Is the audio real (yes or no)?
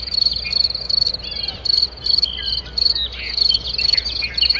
yes